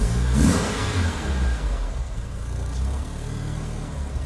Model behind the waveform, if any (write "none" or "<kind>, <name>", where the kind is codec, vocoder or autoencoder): codec, SNAC